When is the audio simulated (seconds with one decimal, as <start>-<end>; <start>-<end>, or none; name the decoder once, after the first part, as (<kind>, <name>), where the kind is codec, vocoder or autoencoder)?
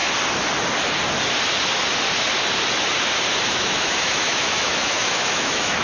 3.5-5.8 (autoencoder, DAC-VAE)